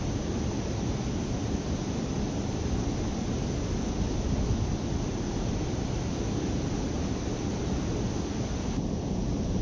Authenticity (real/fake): real